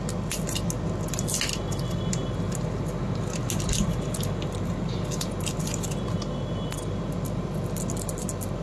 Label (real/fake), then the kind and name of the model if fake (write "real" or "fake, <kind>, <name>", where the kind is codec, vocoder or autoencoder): real